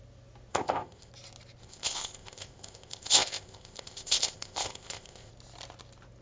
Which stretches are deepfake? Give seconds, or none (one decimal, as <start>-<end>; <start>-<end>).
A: 0.5-1.1; 1.6-5.3